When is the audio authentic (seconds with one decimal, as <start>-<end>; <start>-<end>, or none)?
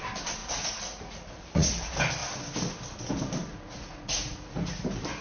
0.0-0.4; 1.8-3.5; 4.8-5.2